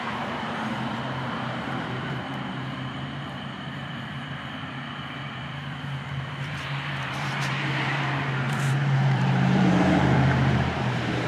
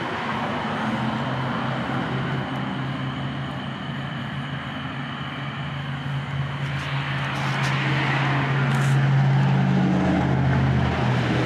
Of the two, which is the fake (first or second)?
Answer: first